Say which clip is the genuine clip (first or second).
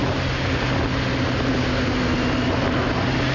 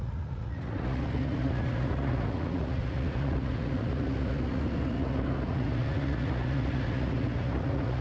first